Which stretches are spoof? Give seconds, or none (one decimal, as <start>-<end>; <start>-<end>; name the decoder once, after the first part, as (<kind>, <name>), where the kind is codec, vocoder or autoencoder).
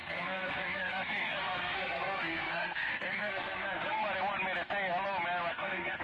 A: 0.0-4.0 (codec, SNAC); 5.5-6.0